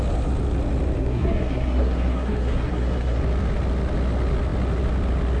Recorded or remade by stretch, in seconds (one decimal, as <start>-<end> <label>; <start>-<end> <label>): 0.0-1.0 recorded; 1.0-3.2 remade; 3.2-5.4 recorded